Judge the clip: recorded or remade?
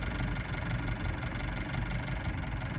recorded